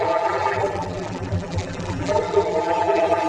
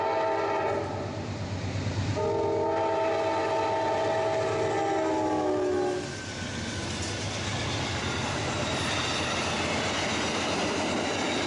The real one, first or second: second